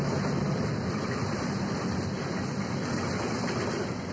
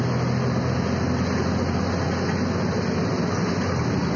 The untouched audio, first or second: second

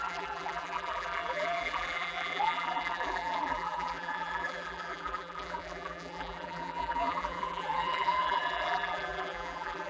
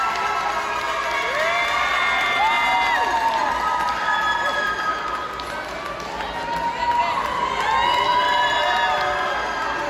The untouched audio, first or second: second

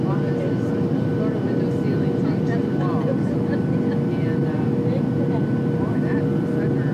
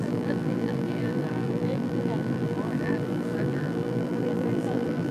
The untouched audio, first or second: first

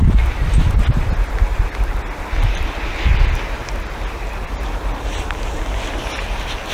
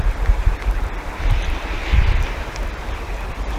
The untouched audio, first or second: first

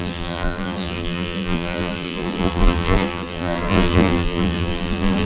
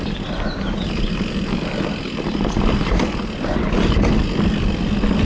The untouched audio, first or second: second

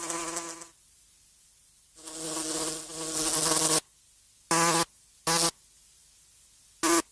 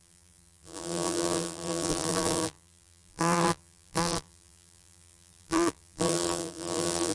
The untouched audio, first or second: first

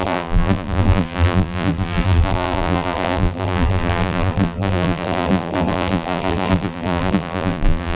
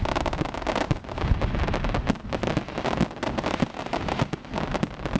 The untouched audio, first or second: second